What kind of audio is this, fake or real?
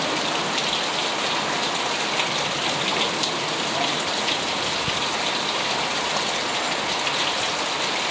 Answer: real